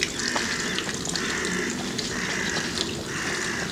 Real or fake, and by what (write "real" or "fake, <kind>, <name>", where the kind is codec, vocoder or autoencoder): real